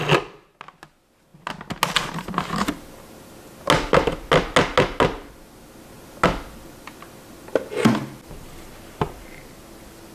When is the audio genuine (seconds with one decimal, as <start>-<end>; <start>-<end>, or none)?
0.0-10.1